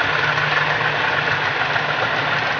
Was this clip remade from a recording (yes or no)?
no